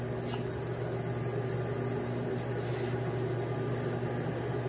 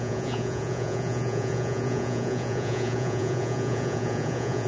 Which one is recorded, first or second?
first